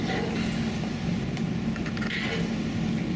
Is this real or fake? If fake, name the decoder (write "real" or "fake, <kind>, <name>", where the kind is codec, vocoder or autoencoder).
real